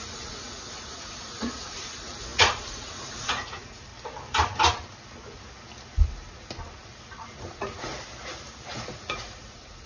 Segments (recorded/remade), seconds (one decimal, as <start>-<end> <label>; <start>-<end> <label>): 0.0-3.9 remade; 3.9-7.4 recorded; 7.4-7.9 remade; 7.9-8.7 recorded; 8.7-9.9 remade